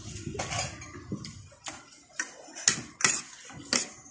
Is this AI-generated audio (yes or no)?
no